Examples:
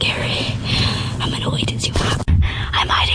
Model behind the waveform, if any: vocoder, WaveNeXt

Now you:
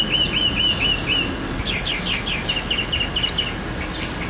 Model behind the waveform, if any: none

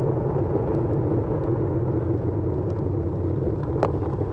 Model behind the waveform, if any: none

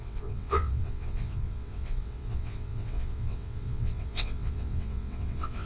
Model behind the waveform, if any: vocoder, WaveNeXt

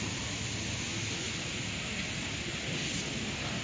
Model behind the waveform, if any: none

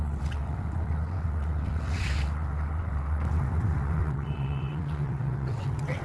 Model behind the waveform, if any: vocoder, WaveNeXt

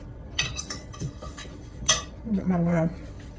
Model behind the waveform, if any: vocoder, WaveNeXt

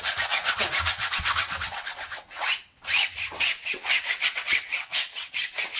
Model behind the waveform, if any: vocoder, WaveNeXt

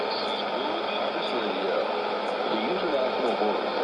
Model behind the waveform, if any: none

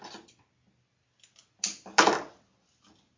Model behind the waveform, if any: none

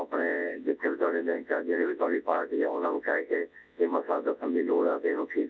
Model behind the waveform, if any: vocoder, WaveNeXt